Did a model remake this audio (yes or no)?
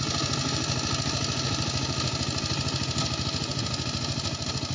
no